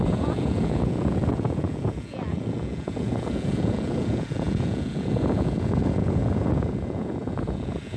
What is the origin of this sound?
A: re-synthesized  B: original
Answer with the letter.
A